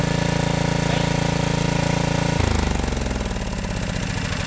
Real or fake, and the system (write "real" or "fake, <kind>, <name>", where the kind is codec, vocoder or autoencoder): real